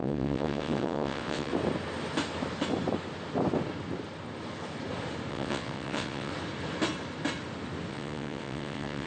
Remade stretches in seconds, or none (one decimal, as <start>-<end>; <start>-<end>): 0.0-1.5; 5.3-6.3; 7.9-9.1